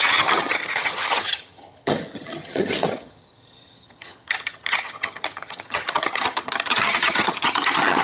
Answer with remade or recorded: remade